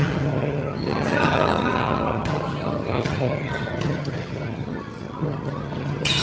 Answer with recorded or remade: remade